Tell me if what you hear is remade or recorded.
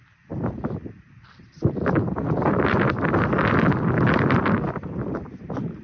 recorded